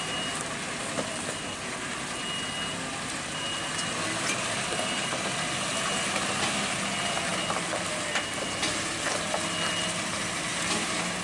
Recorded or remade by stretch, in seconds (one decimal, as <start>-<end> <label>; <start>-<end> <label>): 0.0-10.5 recorded; 10.5-11.2 remade